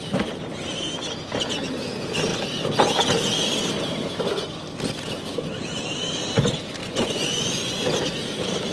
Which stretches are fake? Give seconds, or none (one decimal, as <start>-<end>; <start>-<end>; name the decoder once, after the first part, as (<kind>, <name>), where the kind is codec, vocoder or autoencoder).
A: 6.8-7.8 (vocoder, Vocos)